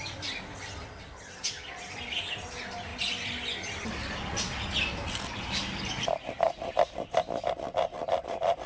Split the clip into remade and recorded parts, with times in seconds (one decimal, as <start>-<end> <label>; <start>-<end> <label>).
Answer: 0.0-8.7 recorded